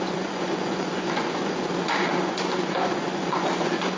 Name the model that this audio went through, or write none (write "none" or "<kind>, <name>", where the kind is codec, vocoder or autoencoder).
vocoder, Vocos